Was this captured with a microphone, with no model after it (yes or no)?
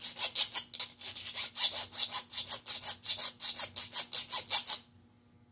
yes